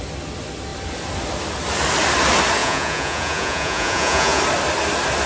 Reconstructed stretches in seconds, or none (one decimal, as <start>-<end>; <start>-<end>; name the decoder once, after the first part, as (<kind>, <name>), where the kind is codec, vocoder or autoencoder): 2.6-4.4 (vocoder, Vocos)